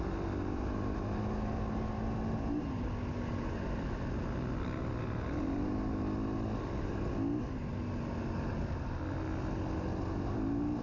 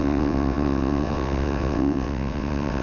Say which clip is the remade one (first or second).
second